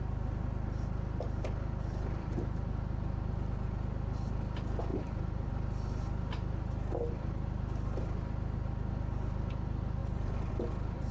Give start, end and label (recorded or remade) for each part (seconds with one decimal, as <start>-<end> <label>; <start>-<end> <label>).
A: 0.0-4.9 recorded; 4.9-5.5 remade; 5.5-10.0 recorded; 10.0-10.5 remade; 10.5-11.1 recorded